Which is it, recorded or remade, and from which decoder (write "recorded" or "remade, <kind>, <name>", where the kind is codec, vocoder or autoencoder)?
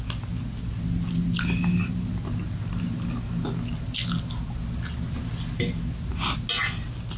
recorded